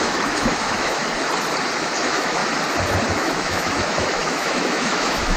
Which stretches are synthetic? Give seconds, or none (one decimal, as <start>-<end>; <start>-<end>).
0.0-1.0; 1.8-2.4; 3.1-5.4